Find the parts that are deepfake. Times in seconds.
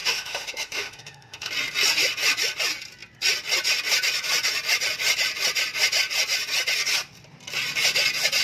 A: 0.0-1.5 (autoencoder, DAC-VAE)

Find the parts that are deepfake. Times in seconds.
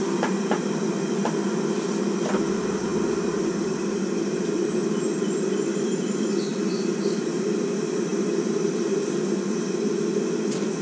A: none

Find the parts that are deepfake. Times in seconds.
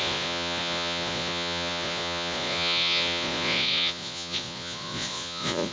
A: 0.0-5.7 (vocoder, Vocos)